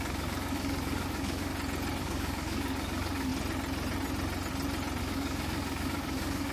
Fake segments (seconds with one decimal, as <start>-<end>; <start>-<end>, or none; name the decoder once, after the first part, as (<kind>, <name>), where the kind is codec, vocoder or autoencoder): 0.0-1.5 (codec, DAC); 2.0-3.3; 5.0-6.5